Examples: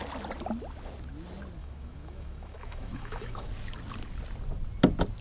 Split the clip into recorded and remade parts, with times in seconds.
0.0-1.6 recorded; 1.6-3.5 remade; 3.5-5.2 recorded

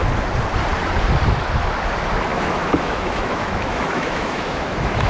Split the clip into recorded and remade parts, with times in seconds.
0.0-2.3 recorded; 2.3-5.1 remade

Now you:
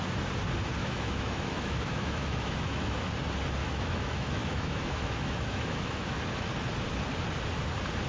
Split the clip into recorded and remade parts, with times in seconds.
0.0-0.8 recorded; 0.8-3.1 remade; 3.1-3.6 recorded; 3.6-6.5 remade; 6.5-8.1 recorded

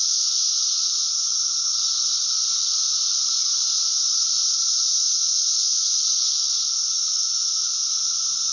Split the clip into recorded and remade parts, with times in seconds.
0.0-0.4 remade; 0.4-5.0 recorded; 5.0-7.7 remade; 7.7-8.5 recorded

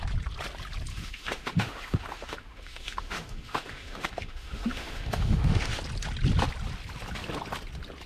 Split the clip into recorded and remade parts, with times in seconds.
0.0-0.9 recorded; 0.9-5.8 remade; 5.8-8.1 recorded

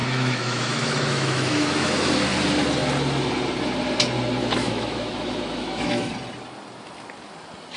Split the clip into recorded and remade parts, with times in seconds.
0.0-2.1 remade; 2.1-4.4 recorded; 4.4-6.1 remade; 6.1-7.8 recorded